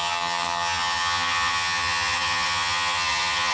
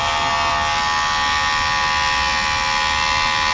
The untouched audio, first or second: second